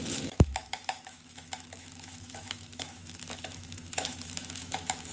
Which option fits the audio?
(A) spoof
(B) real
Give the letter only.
A